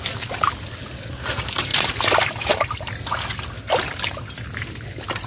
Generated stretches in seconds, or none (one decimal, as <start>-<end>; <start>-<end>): none